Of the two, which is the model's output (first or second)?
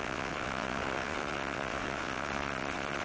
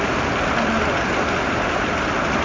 first